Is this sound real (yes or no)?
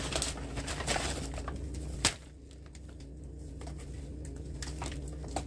yes